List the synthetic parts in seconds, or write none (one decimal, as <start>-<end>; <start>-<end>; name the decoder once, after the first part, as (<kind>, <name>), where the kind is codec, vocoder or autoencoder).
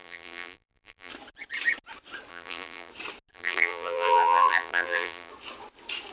0.0-1.1 (vocoder, BigVGAN v2); 2.3-2.9; 3.3-5.3